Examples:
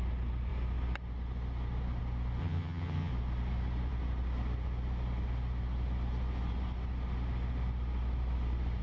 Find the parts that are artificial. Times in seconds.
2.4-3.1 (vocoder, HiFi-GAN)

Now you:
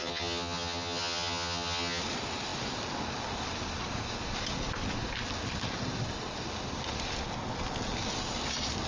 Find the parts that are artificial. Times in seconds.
0.0-2.0 (vocoder, HiFi-GAN)

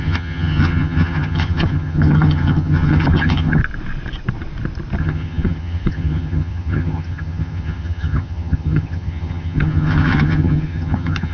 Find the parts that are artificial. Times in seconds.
0.0-3.6 (vocoder, HiFi-GAN); 5.0-11.3

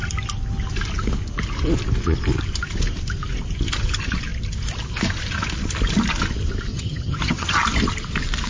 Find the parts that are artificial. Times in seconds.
6.7-7.6 (vocoder, HiFi-GAN)

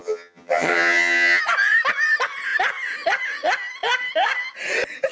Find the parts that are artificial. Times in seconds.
0.0-1.4 (vocoder, HiFi-GAN)

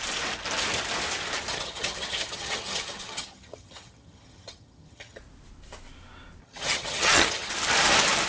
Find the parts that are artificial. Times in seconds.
1.5-5.2 (vocoder, HiFi-GAN); 6.4-7.5

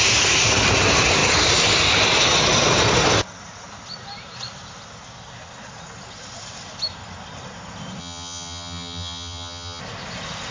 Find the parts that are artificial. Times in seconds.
8.0-9.8 (vocoder, HiFi-GAN)

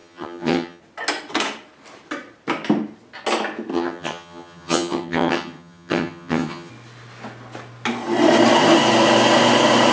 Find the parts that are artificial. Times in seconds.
0.0-0.8 (vocoder, HiFi-GAN); 3.7-6.7